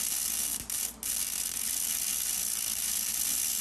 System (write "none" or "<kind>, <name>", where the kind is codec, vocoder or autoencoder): none